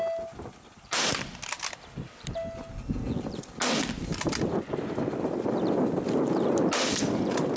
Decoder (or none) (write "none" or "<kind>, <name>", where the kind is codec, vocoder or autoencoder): none